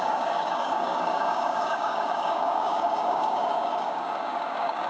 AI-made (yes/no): yes